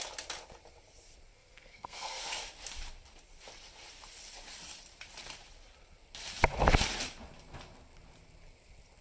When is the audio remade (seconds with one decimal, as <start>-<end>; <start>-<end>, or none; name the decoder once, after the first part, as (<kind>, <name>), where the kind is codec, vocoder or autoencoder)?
1.3-2.2 (codec, SNAC)